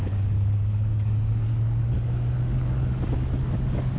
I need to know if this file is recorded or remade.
remade